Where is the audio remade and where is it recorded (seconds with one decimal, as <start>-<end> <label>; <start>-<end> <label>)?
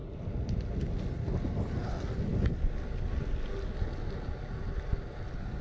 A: 0.0-5.6 recorded